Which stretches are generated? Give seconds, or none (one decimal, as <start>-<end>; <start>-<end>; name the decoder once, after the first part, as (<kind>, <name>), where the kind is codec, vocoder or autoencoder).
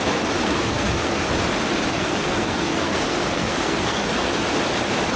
0.4-1.3 (codec, SNAC); 1.9-4.3